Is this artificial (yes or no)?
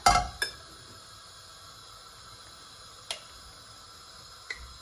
no